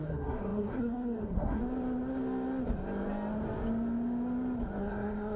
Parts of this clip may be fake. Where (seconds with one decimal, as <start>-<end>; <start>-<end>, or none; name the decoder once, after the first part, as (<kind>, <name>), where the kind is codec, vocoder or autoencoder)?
0.0-1.6 (codec, SNAC); 4.8-5.4